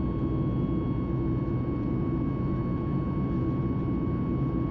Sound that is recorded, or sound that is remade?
recorded